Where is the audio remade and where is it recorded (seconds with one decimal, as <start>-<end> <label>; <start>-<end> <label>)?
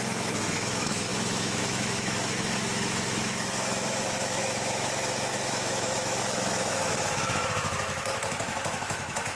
0.0-9.3 remade